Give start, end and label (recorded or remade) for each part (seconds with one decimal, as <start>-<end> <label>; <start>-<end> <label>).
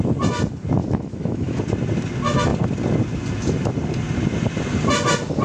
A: 0.0-0.8 recorded; 0.8-1.6 remade; 1.6-5.4 recorded